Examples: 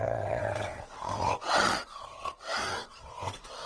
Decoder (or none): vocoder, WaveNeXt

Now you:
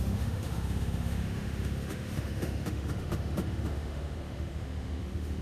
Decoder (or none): autoencoder, DAC-VAE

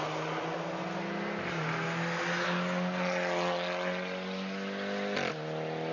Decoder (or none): none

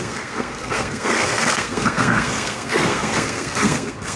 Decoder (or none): codec, SNAC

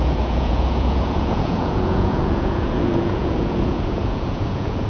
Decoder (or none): vocoder, Vocos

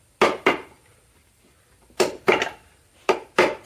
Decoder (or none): none